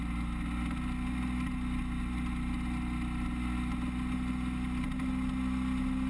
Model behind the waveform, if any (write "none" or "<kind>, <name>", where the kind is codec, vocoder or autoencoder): none